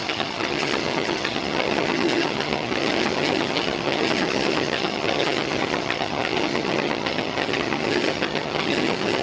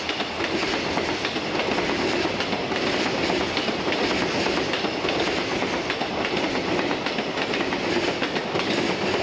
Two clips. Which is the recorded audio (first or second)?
second